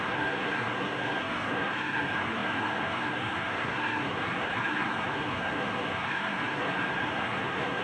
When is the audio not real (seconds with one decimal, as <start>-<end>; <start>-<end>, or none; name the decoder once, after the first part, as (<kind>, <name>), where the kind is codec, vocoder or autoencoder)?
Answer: 0.0-7.8 (codec, SNAC)